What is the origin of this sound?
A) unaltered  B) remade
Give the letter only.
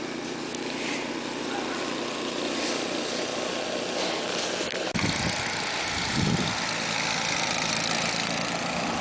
A